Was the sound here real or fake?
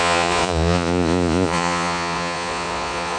fake